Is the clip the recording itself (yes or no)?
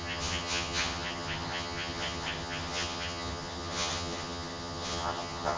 no